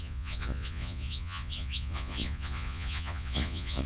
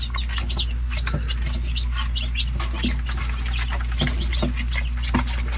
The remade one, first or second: first